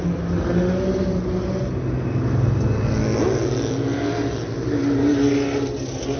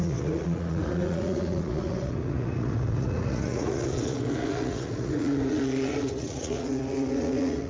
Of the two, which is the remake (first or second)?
second